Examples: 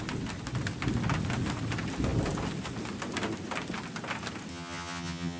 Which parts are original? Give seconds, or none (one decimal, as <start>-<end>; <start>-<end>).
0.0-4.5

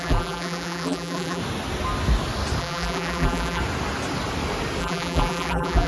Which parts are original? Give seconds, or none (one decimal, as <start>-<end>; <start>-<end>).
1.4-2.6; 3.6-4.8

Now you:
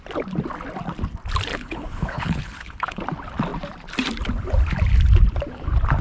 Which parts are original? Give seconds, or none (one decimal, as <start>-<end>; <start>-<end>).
0.0-1.5; 3.0-6.0

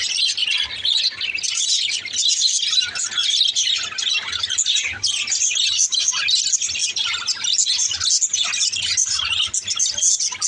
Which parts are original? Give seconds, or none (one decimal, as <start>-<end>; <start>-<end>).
0.0-0.4; 1.0-3.2; 3.8-10.5

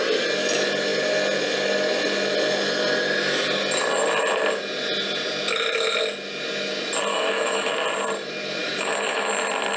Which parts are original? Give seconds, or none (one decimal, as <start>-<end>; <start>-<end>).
0.0-7.1; 7.7-8.6; 9.3-9.8

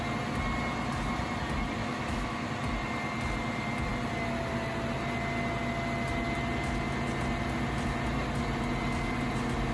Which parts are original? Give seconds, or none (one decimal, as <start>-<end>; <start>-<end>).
0.0-1.8; 2.5-9.7

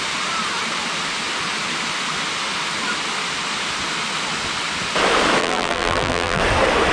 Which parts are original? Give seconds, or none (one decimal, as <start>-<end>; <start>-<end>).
0.0-5.4; 6.4-6.9